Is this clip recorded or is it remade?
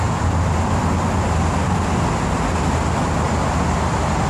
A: recorded